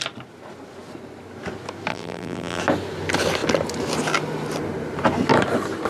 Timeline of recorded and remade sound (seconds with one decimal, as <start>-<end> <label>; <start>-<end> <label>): 0.0-1.9 recorded; 1.9-2.6 remade; 2.6-5.9 recorded